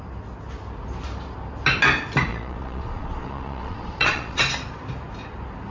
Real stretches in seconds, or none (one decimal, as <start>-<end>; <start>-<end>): 0.0-2.3; 4.4-5.7